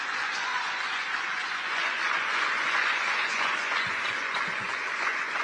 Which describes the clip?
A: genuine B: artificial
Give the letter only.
B